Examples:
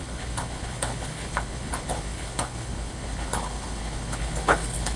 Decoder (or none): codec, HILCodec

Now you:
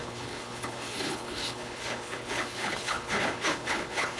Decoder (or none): codec, HILCodec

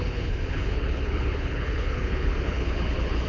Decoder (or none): codec, HILCodec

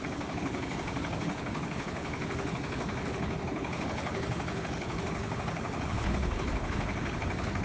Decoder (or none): codec, HILCodec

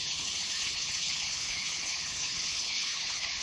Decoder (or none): codec, HILCodec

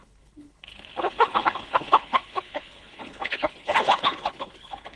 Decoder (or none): codec, HILCodec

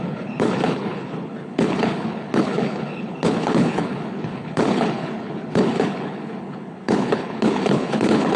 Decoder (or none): codec, HILCodec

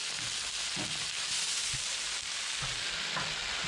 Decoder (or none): none